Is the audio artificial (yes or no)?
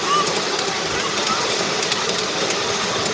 no